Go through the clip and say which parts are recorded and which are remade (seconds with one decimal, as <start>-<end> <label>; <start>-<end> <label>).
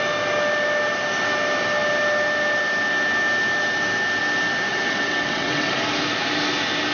0.0-4.7 recorded; 4.7-5.7 remade; 5.7-6.9 recorded